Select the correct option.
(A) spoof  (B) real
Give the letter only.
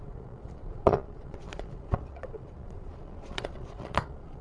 A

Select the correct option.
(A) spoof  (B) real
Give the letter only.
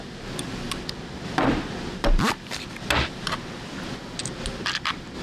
B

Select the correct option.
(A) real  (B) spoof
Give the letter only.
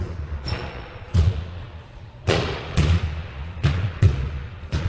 B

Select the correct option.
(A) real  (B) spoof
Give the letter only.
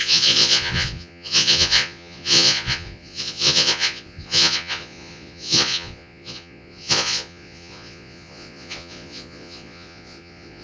B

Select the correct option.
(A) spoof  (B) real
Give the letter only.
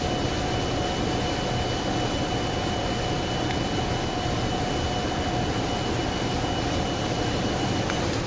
B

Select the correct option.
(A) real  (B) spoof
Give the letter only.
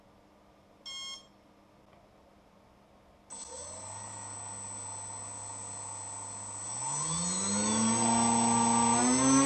A